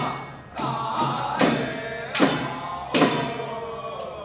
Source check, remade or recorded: recorded